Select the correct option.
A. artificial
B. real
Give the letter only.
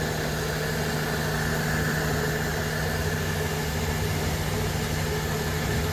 B